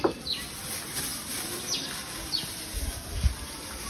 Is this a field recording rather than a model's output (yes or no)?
yes